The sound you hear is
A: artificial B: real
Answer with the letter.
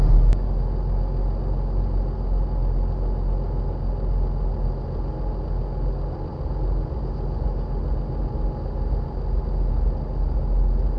B